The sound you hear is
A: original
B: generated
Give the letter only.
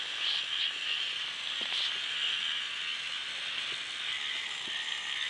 A